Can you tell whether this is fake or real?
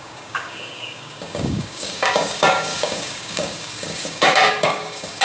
fake